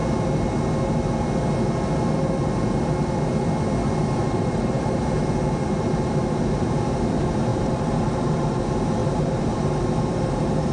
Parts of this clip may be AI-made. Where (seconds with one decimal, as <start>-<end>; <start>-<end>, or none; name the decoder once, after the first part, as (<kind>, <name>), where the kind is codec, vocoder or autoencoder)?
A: 4.2-5.0 (vocoder, BigVGAN v2); 7.5-8.6; 9.0-9.8